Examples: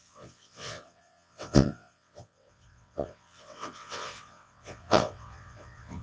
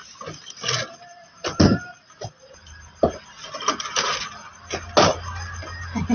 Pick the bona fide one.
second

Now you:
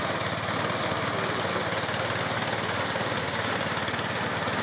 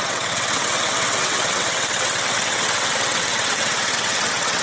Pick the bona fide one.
first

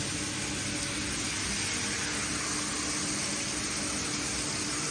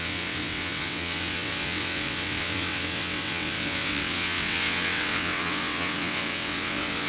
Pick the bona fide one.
first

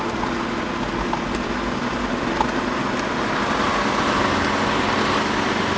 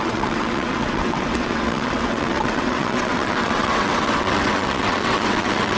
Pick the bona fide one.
first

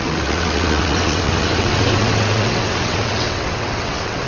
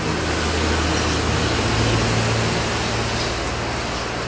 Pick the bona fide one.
second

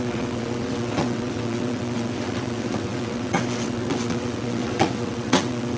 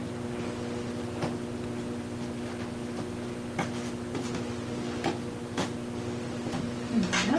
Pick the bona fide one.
second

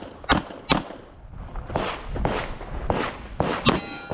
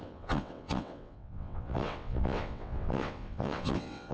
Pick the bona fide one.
first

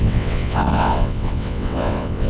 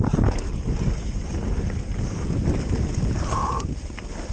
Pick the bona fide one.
second